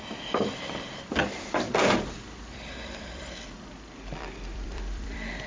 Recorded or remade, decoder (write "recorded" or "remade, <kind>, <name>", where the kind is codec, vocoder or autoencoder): remade, vocoder, BigVGAN v2